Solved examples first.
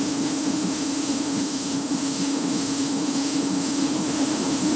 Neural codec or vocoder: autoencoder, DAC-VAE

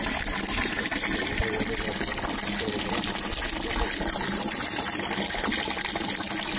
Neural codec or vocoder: none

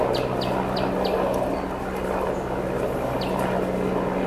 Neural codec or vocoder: none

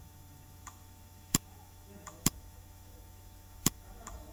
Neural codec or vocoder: autoencoder, DAC-VAE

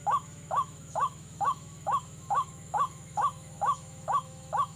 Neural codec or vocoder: autoencoder, DAC-VAE